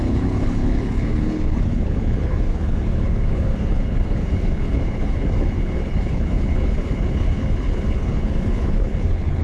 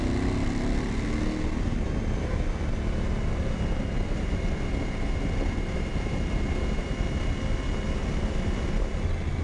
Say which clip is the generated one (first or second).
first